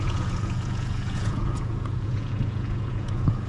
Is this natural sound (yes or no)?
no